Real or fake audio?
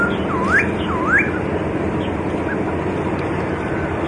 real